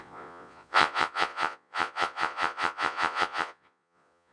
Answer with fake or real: fake